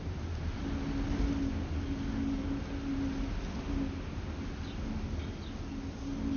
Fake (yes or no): no